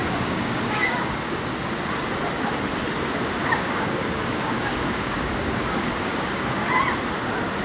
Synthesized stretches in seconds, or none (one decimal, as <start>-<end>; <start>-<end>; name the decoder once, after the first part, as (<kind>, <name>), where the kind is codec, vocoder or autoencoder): 0.0-1.5 (codec, DAC); 3.4-6.8